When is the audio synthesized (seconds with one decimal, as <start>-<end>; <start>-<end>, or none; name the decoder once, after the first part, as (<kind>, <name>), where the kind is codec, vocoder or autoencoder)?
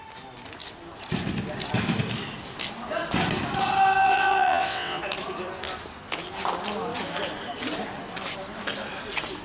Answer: 4.0-5.0 (vocoder, WaveNeXt)